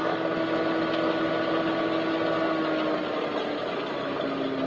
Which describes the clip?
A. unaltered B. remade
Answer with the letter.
A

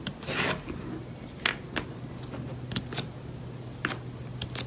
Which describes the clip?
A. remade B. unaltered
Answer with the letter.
B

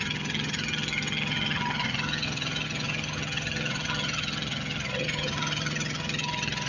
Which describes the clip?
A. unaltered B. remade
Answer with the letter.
B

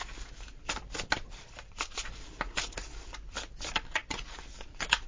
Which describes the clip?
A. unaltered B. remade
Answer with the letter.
A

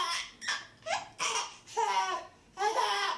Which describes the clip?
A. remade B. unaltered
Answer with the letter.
B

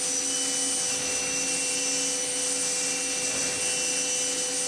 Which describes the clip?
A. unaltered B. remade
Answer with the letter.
A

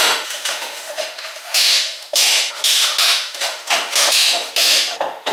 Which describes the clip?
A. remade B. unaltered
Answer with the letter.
A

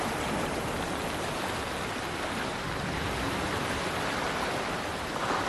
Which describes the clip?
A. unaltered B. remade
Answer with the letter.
A